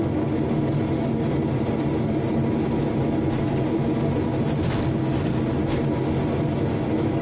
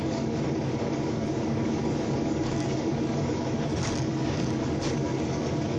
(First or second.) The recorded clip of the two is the first